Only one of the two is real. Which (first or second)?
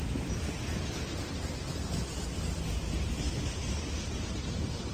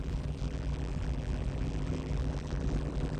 first